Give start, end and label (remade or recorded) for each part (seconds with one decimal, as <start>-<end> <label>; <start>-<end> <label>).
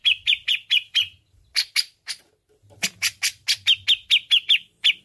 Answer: 0.0-5.0 recorded